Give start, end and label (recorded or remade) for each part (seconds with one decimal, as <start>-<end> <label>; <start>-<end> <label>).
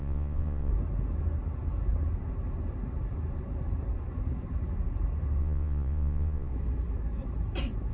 0.0-0.7 remade; 0.7-5.4 recorded; 5.4-6.5 remade; 6.5-7.9 recorded